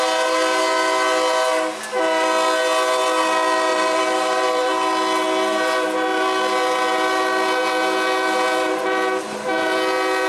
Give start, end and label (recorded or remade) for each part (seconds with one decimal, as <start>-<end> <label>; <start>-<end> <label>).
0.0-3.7 recorded; 3.7-4.7 remade; 4.7-10.3 recorded